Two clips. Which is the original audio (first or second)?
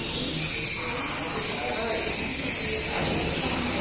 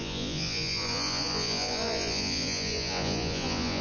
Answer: first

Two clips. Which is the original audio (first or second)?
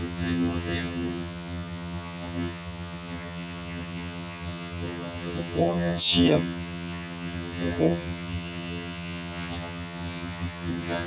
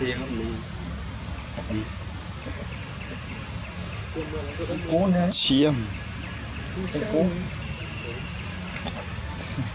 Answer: second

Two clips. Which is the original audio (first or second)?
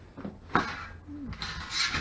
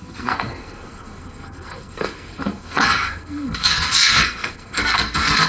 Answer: first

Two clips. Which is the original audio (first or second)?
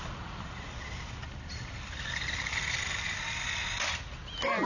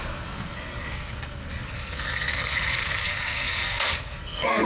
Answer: first